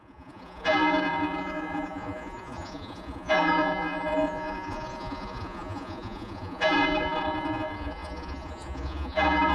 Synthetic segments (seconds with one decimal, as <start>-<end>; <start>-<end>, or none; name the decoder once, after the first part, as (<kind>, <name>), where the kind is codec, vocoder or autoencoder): 0.0-9.5 (vocoder, Vocos)